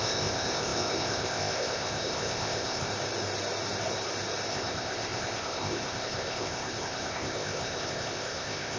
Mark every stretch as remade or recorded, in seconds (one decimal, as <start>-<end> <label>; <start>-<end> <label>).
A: 0.0-2.9 remade; 2.9-4.5 recorded; 4.5-8.8 remade